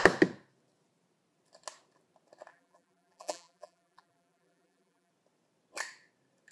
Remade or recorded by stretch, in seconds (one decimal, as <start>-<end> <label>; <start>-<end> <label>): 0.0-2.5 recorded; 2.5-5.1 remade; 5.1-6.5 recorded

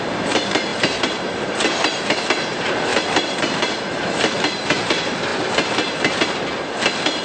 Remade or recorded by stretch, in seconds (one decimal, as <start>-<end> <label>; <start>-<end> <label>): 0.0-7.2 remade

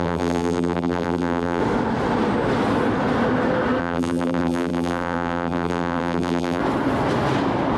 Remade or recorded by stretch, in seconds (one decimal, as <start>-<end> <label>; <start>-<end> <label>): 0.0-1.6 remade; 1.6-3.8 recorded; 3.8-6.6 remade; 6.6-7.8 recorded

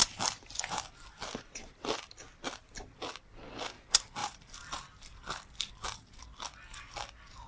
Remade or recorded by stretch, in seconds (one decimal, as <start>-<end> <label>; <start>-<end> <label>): 0.0-2.7 remade; 2.7-4.2 recorded; 4.2-5.2 remade; 5.2-7.5 recorded

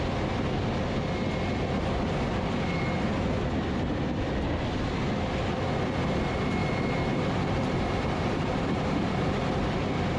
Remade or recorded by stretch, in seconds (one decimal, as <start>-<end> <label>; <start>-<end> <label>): 0.0-6.6 recorded; 6.6-9.1 remade; 9.1-10.2 recorded